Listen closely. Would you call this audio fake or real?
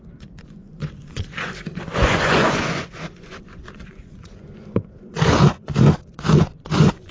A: fake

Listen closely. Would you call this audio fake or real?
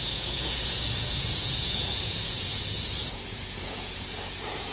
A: fake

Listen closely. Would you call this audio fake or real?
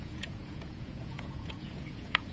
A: fake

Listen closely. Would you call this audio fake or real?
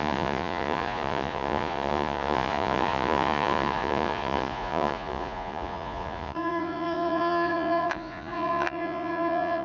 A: fake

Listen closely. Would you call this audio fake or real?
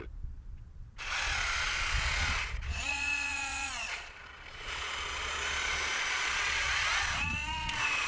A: fake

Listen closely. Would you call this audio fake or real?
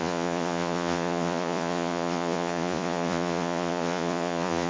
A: fake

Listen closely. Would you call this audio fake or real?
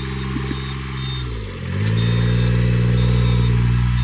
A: real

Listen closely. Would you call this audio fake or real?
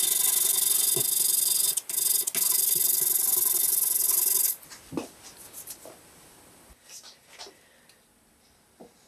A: real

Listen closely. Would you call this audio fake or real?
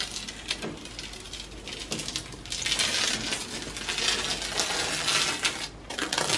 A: real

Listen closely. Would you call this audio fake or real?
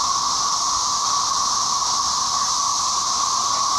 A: real